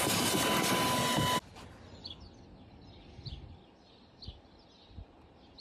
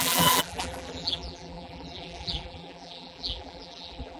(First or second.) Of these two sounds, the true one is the first